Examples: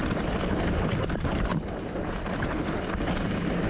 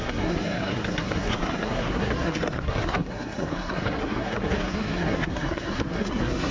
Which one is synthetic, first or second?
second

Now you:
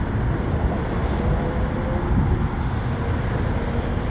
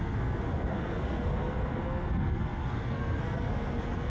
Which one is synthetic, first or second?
second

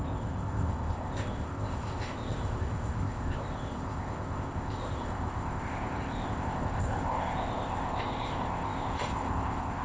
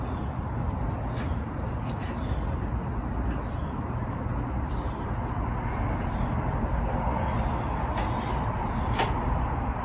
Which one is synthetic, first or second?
first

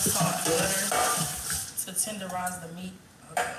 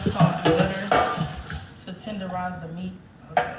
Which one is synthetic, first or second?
first